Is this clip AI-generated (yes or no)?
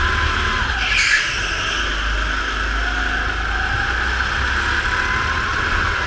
no